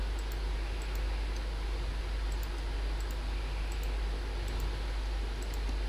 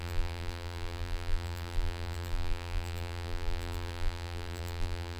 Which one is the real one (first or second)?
first